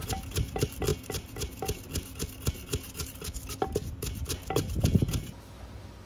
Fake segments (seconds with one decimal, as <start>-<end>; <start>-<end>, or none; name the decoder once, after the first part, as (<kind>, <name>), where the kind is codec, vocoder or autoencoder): none